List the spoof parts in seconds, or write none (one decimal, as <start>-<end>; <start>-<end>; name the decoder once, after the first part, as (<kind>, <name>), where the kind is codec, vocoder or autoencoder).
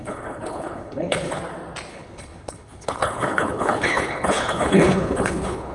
0.0-1.4 (codec, HILCodec); 1.9-5.7